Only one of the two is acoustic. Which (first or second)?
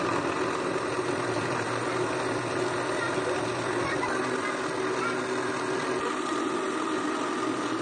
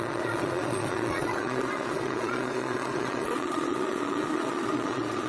first